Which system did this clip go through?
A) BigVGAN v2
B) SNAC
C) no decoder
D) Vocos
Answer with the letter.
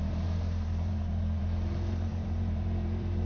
A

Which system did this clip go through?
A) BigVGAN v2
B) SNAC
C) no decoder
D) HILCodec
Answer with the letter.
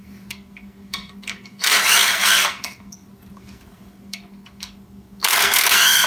B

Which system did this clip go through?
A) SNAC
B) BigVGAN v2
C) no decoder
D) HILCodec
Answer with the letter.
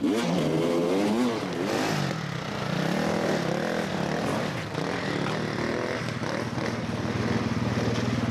C